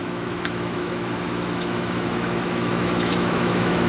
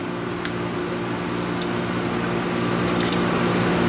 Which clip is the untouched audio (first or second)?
second